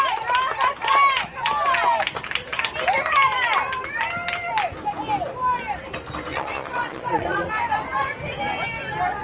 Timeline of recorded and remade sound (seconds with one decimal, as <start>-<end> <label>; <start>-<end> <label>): 0.0-6.3 recorded; 6.3-7.5 remade; 7.5-9.2 recorded